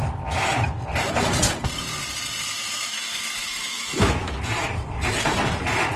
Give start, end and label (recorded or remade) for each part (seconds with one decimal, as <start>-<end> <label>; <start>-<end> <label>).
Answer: 0.0-2.4 recorded; 2.4-4.4 remade; 4.4-6.0 recorded